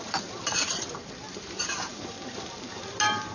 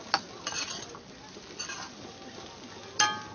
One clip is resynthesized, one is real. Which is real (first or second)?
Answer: second